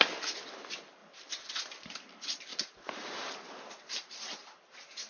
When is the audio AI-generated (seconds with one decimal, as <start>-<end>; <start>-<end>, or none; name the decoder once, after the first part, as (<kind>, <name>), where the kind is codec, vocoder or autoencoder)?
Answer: none